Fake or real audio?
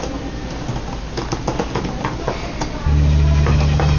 real